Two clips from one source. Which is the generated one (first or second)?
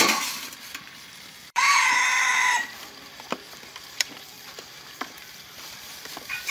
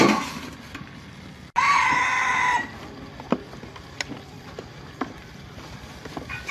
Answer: first